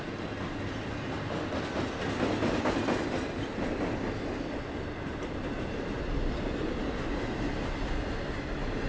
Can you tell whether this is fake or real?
real